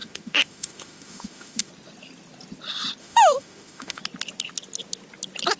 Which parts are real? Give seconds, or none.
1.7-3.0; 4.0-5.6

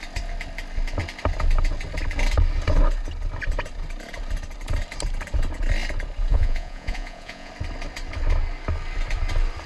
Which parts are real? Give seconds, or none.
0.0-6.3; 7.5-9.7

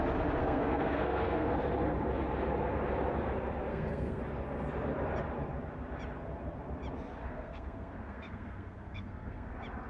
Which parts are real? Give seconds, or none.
0.0-0.4; 1.5-3.7; 4.2-7.2; 9.5-9.9

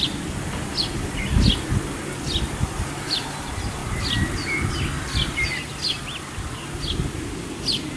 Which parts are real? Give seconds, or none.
0.0-8.0

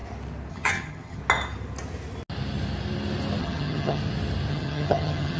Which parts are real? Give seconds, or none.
0.0-0.5; 1.2-3.4; 4.0-4.5